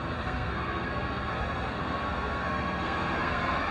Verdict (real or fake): fake